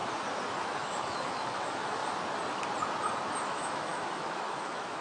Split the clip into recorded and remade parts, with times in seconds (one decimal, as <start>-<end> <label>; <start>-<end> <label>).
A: 0.0-0.6 recorded; 0.6-2.0 remade; 2.0-3.4 recorded; 3.4-5.0 remade

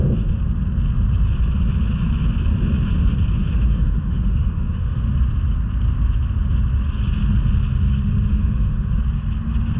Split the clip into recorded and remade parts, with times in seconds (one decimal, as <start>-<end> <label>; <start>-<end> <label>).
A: 0.0-3.4 recorded; 3.4-5.0 remade; 5.0-8.3 recorded; 8.3-9.0 remade; 9.0-9.8 recorded

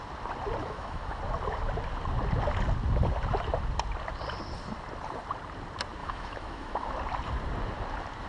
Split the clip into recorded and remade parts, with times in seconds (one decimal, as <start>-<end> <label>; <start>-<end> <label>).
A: 0.0-0.6 recorded; 0.6-1.2 remade; 1.2-6.0 recorded; 6.0-6.9 remade; 6.9-8.3 recorded

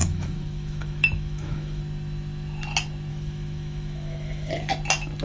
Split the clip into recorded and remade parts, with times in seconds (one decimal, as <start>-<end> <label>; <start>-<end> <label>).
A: 0.0-1.8 remade; 1.8-3.1 recorded; 3.1-4.5 remade; 4.5-5.2 recorded

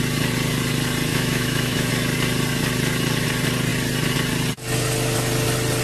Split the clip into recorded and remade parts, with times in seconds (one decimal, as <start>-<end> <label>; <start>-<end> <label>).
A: 0.0-1.1 recorded; 1.1-1.9 remade; 1.9-5.8 recorded